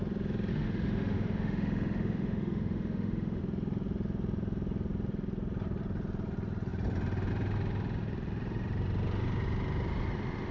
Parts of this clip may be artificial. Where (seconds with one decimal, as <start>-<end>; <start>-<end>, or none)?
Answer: 0.5-3.4